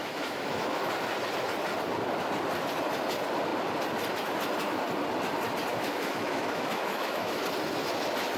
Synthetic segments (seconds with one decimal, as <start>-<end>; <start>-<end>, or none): 0.0-0.8; 5.7-7.4